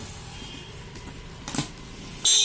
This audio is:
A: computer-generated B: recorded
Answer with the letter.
B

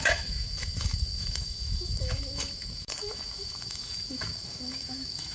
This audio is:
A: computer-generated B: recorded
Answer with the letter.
A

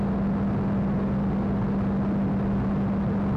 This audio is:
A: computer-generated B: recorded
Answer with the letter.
B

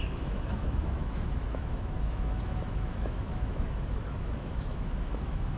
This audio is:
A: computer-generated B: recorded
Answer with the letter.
A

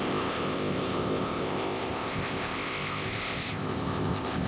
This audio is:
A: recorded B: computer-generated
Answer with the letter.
B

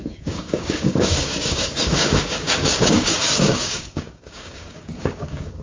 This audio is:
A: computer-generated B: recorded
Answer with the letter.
A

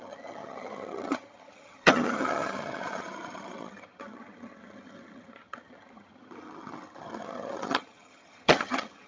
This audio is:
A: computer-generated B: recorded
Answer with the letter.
A